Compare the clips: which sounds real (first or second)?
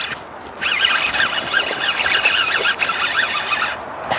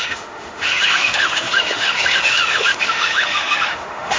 first